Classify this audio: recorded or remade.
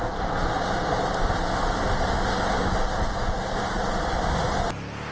recorded